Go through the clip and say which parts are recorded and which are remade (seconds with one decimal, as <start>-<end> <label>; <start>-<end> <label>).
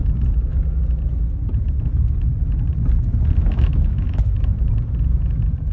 0.0-3.4 recorded; 3.4-4.5 remade; 4.5-5.7 recorded